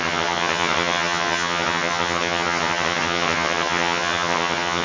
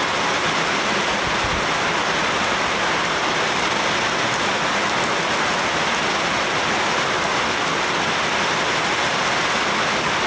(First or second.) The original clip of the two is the second